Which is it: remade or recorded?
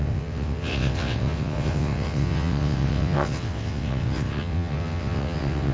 remade